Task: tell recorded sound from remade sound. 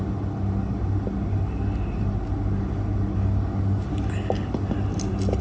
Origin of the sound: recorded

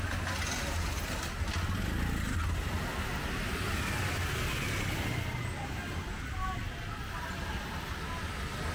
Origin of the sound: recorded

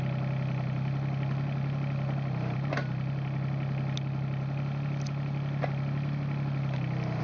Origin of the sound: recorded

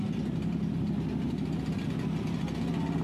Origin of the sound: recorded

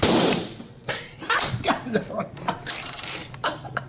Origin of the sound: remade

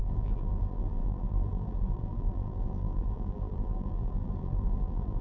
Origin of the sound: remade